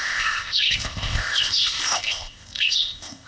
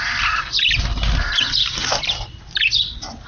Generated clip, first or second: first